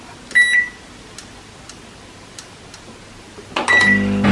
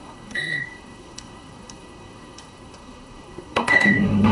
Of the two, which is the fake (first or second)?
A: second